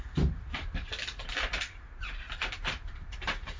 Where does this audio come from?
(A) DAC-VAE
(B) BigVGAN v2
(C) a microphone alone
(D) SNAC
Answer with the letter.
B